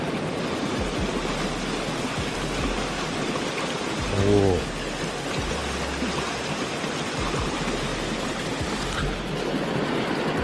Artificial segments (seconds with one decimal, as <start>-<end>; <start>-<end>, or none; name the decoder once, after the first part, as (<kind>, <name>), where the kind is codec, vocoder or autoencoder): none